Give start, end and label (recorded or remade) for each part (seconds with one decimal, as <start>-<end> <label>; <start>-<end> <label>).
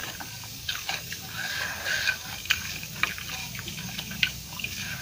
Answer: 0.0-3.0 remade; 3.0-3.4 recorded; 3.4-5.0 remade